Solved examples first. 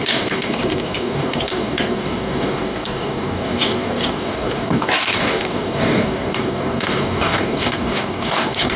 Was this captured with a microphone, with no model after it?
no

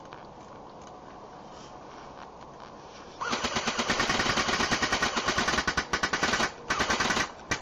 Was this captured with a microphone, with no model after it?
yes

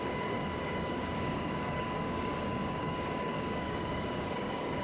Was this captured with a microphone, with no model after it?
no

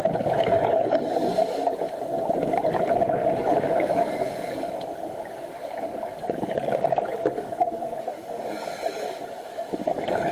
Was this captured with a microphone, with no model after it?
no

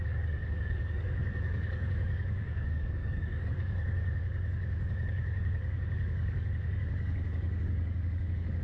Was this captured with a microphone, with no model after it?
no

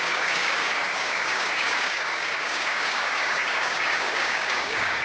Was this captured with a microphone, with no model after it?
no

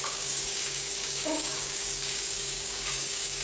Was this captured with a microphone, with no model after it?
no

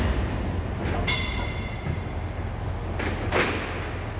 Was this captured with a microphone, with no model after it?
yes